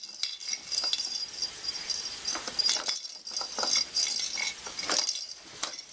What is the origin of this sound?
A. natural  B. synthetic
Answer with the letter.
A